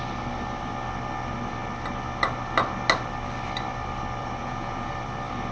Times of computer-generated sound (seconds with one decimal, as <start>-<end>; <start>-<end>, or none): 4.2-4.9